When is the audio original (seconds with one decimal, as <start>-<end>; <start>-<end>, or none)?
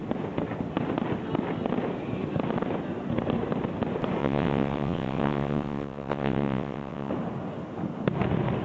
0.0-4.2; 7.1-8.6